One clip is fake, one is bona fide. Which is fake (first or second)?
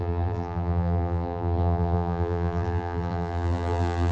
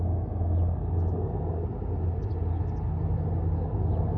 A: first